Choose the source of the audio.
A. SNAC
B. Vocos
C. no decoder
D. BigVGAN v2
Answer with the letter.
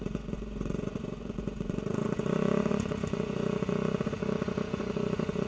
B